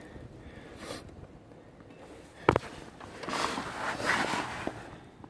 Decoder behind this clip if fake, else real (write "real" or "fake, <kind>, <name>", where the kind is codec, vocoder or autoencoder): real